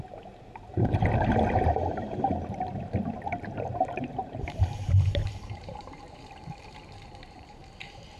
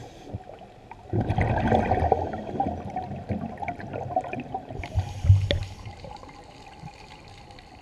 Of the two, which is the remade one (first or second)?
first